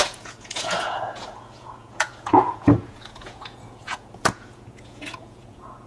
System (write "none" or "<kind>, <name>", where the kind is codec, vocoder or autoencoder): vocoder, Vocos